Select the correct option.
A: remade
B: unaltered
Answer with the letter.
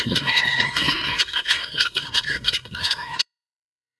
A